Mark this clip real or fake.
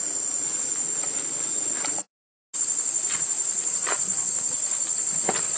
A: real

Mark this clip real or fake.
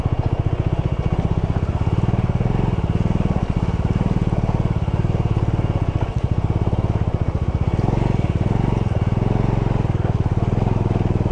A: real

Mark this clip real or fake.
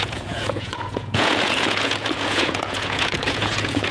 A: fake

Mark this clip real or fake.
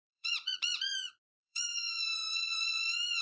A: fake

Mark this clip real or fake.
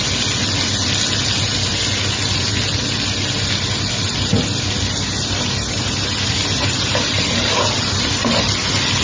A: real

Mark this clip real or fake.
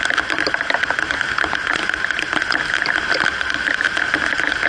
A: real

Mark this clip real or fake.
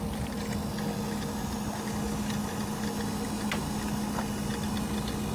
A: real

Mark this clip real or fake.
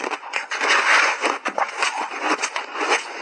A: fake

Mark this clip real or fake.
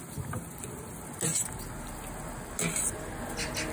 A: real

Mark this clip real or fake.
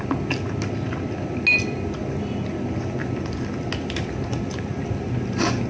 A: real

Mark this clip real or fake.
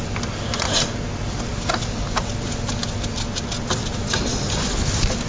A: real